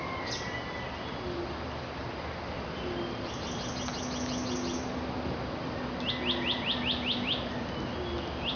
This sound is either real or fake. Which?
real